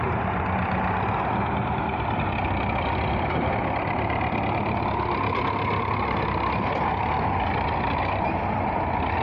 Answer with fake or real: real